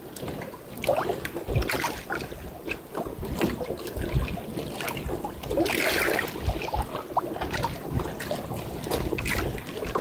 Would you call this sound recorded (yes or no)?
yes